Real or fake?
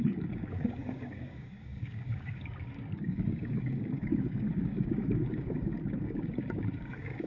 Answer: fake